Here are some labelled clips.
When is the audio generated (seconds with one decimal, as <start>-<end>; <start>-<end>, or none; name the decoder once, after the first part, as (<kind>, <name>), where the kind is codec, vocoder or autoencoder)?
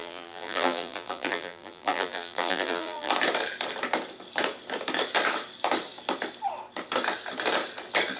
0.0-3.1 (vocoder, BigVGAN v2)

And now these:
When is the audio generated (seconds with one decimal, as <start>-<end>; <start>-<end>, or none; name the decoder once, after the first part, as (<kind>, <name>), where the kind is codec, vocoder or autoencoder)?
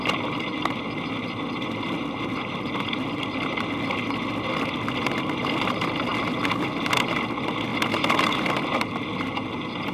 none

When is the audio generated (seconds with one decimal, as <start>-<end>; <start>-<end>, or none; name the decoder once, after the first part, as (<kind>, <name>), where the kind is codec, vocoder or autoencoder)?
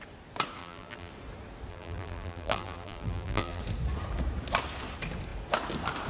0.6-1.1 (vocoder, BigVGAN v2); 1.7-3.6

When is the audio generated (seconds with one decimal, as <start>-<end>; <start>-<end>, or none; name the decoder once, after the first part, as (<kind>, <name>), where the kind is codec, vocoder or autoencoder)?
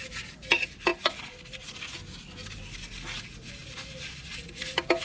none